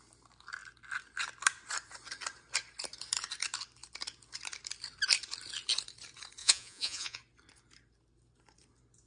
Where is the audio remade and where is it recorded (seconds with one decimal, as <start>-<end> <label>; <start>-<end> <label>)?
0.0-6.4 recorded; 6.4-7.2 remade; 7.2-9.1 recorded